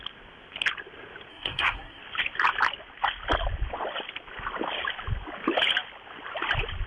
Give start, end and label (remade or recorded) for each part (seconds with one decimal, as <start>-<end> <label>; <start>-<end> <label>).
0.0-1.3 recorded; 1.3-2.0 remade; 2.0-6.9 recorded